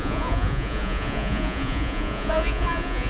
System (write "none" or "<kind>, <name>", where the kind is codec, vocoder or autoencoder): vocoder, Vocos